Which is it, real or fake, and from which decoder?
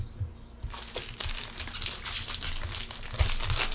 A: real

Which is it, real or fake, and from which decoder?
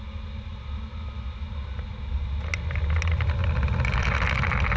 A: real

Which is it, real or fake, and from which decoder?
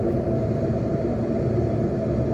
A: real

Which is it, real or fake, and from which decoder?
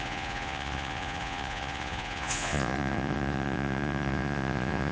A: fake, vocoder, Vocos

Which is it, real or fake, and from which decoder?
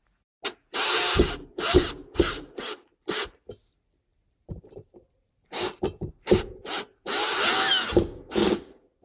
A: real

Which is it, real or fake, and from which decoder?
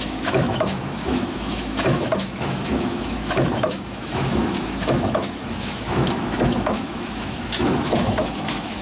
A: fake, autoencoder, DAC-VAE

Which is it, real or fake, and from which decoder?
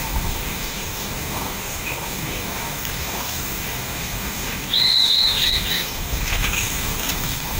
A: fake, codec, DAC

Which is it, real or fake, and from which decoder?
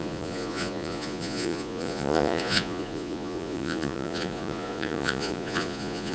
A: fake, vocoder, Vocos